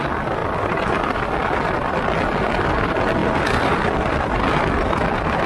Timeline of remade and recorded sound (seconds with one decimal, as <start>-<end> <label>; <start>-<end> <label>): 0.0-0.4 recorded; 0.4-2.8 remade; 2.8-3.2 recorded; 3.2-4.4 remade; 4.4-5.5 recorded